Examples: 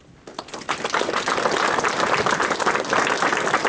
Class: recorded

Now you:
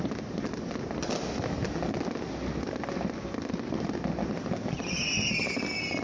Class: recorded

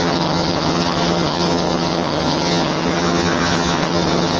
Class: remade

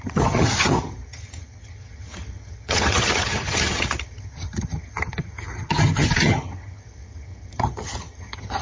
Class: remade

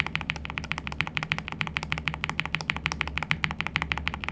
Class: recorded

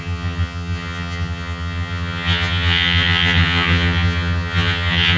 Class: remade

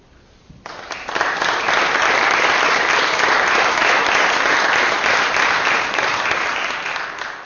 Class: recorded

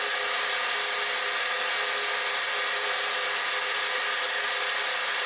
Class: recorded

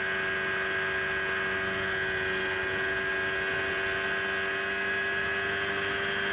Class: recorded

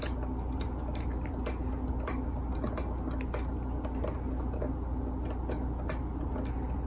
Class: recorded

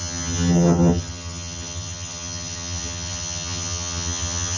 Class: remade